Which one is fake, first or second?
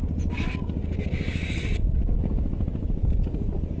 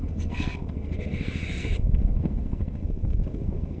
second